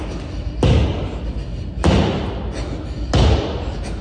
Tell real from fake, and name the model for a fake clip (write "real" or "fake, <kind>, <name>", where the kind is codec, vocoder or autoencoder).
real